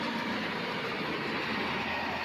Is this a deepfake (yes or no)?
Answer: no